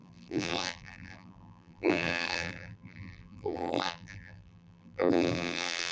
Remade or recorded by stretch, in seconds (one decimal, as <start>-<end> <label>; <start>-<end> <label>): 0.0-5.9 remade